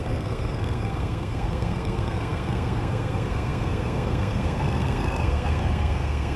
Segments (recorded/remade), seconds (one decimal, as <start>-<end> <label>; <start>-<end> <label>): 0.0-6.4 remade